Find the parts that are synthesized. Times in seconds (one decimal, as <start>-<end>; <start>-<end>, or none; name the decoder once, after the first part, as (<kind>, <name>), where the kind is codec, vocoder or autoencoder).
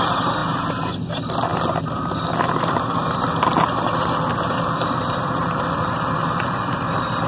none